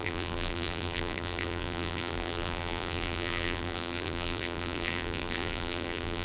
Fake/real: fake